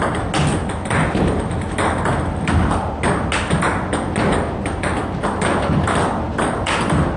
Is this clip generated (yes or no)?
no